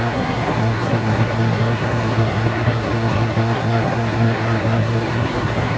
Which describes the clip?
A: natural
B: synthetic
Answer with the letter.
B